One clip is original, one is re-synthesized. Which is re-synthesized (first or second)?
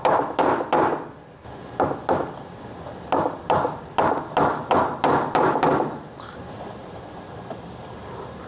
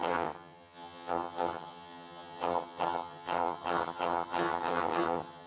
second